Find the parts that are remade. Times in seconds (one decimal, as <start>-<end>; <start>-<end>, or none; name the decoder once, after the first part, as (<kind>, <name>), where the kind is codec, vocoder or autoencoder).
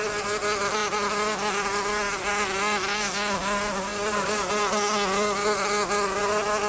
none